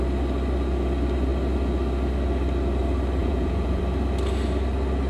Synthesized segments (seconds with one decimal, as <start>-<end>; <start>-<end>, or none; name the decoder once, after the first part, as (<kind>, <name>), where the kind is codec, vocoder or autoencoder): 3.2-3.8 (vocoder, Vocos)